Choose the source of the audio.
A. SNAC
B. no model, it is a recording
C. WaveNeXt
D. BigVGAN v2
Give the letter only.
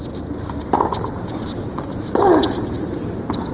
B